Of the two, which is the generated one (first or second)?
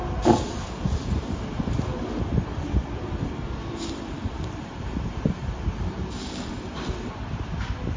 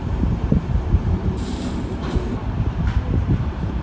second